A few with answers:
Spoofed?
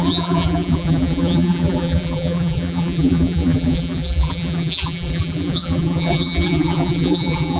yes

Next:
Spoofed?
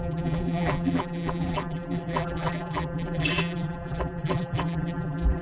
yes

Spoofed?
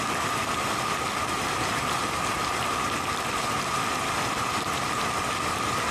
no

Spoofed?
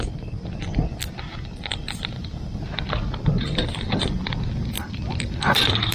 no